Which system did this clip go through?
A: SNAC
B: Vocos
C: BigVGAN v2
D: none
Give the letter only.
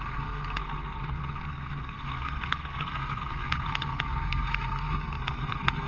A